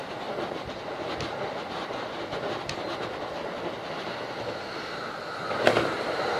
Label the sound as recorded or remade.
recorded